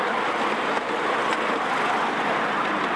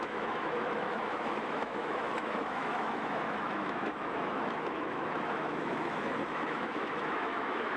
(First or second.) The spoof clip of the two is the second